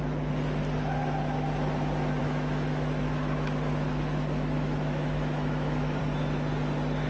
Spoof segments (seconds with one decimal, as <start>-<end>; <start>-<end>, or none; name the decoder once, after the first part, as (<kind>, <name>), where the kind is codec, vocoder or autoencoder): 2.2-6.0 (autoencoder, DAC-VAE)